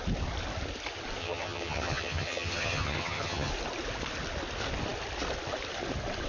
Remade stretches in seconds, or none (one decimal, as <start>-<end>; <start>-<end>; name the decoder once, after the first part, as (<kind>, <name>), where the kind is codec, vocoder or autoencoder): 1.2-3.5 (vocoder, HiFi-GAN)